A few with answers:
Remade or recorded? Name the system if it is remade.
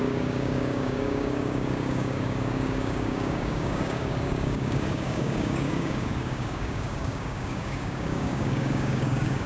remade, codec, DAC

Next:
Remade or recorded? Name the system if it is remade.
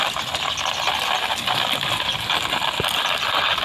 recorded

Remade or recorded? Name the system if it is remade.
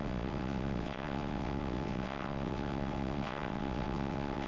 remade, vocoder, WaveNeXt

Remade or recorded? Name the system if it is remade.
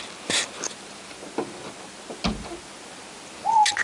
recorded